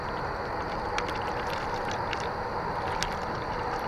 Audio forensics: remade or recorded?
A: recorded